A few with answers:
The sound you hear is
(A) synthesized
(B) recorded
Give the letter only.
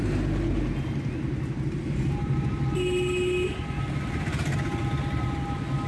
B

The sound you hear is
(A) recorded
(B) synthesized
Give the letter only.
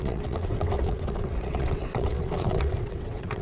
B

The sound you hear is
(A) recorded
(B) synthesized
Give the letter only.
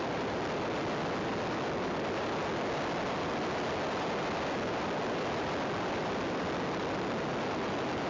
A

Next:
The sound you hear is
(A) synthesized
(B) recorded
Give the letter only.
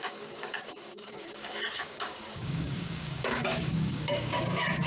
A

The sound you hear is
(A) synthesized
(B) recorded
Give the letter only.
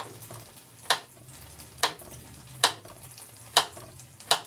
B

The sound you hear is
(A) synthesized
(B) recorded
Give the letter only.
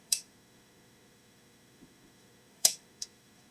A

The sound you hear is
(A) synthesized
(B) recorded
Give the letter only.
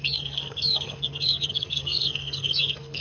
A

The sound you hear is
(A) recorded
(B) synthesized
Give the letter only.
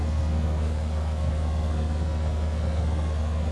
B